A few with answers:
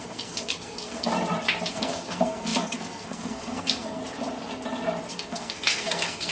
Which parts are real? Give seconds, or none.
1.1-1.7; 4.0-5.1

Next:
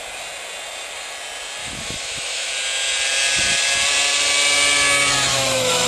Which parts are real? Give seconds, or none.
0.0-1.6; 2.5-5.3